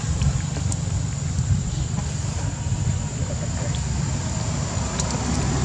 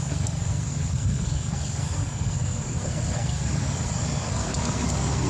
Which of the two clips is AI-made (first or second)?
second